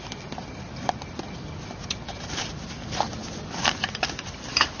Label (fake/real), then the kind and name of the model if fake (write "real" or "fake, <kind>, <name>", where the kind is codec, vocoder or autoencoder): real